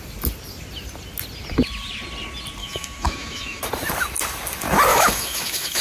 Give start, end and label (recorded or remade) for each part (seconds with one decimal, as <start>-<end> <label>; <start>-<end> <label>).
0.0-2.6 recorded; 2.6-3.6 remade; 3.6-4.9 recorded; 4.9-5.8 remade